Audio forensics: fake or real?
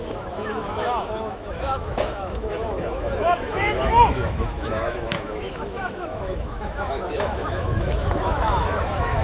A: fake